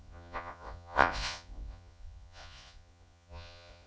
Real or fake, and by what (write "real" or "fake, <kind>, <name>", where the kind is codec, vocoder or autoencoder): fake, vocoder, Vocos